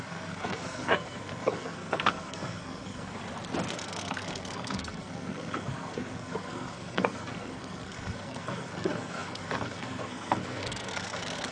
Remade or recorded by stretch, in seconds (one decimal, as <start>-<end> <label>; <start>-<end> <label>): 0.0-3.2 remade; 3.2-3.7 recorded; 3.7-11.5 remade